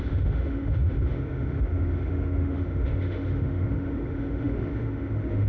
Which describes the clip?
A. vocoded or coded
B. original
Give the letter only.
A